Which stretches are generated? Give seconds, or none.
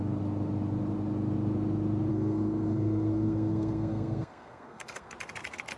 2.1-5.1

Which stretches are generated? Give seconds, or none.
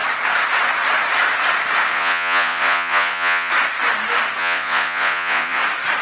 1.9-3.5; 4.4-5.6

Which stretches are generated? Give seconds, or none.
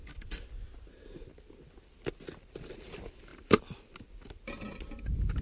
none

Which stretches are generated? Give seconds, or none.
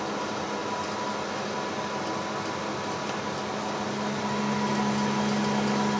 none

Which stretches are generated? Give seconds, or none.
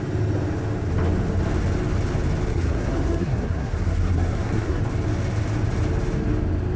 2.5-4.8